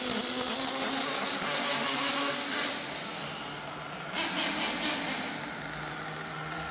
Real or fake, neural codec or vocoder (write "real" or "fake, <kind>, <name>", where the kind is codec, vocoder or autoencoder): real